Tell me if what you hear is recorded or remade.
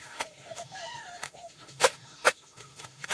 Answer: remade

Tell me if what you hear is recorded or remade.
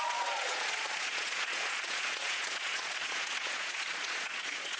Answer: remade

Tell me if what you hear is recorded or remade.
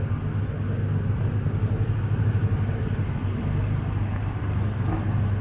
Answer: recorded